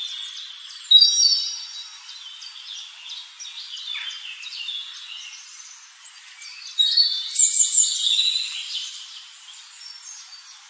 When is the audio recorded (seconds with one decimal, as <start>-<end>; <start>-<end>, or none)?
0.0-10.7